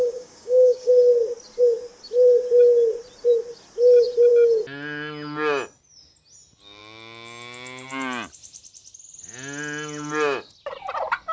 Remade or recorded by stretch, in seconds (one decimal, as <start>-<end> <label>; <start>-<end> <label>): 0.0-0.9 remade; 0.9-11.3 recorded